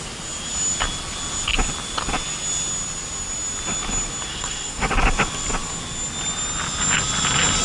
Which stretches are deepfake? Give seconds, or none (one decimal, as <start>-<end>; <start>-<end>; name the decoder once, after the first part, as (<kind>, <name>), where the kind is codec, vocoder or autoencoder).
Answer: 4.3-4.9 (codec, SNAC)